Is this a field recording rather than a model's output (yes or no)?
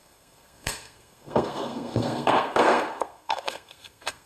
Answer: no